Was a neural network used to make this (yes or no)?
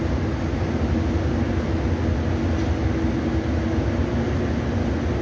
no